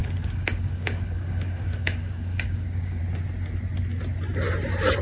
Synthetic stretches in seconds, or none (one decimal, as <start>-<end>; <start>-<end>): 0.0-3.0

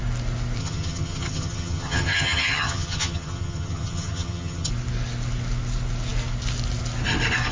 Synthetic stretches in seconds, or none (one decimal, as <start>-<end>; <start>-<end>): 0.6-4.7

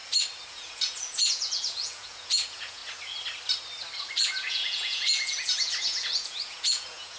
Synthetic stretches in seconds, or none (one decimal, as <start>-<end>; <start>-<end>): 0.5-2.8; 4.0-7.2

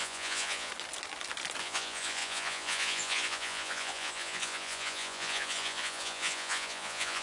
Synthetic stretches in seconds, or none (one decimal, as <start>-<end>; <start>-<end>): 0.0-0.7; 1.6-7.2

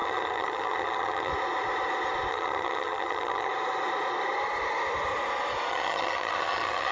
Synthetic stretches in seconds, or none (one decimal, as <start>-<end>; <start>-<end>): 0.0-1.3; 2.3-3.5; 5.7-6.9